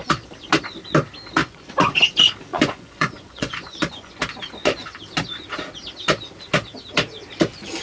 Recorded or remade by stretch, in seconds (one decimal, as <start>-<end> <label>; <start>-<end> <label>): 0.0-1.4 recorded; 1.4-2.0 remade; 2.0-2.5 recorded; 2.5-4.2 remade; 4.2-7.8 recorded